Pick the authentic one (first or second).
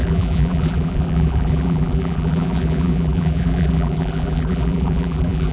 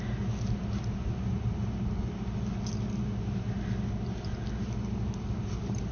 second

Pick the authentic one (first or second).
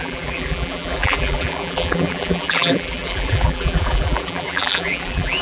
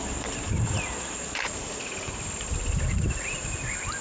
second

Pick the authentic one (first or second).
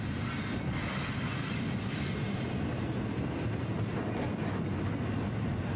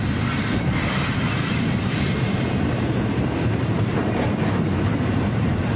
first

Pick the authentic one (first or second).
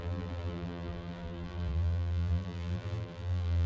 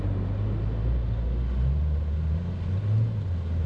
second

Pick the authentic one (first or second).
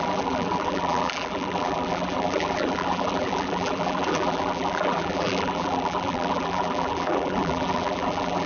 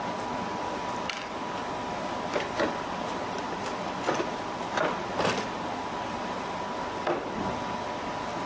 second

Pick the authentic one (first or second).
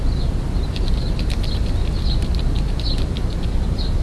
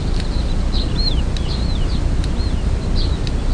second